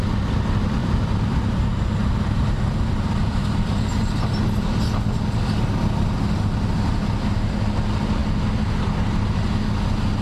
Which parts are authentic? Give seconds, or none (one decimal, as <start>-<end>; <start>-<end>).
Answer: 0.0-0.8; 4.2-10.2